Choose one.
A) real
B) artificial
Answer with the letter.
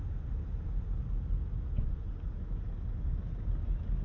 A